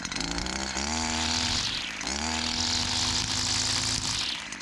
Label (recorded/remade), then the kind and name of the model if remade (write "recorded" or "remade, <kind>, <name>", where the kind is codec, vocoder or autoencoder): recorded